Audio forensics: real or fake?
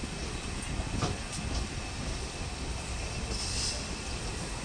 real